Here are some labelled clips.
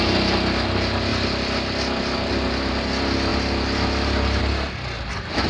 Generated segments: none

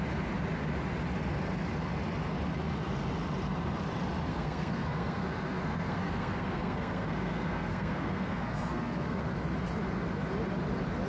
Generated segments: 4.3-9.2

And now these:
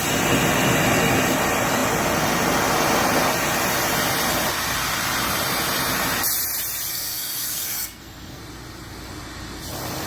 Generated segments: 6.9-8.4

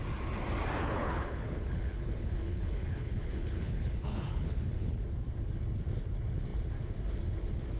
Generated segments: 0.8-5.0

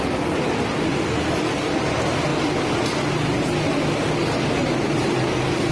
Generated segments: none

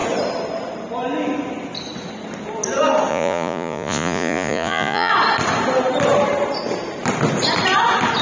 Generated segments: 3.1-5.1

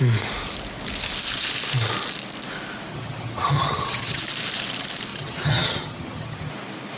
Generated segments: 2.9-4.2; 5.1-6.5

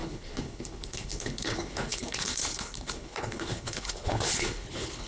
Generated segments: 0.0-5.1